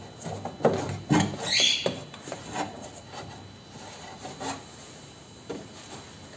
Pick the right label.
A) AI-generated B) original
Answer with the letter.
B